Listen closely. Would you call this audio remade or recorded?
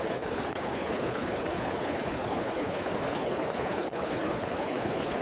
remade